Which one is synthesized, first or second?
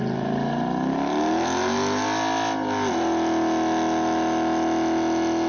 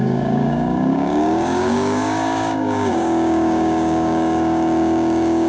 second